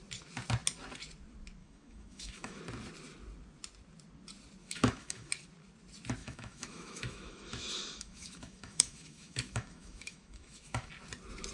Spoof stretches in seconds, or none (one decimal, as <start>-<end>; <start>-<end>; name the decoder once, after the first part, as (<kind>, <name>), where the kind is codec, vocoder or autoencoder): 1.6-2.6 (autoencoder, DAC-VAE); 4.6-5.3; 6.2-10.9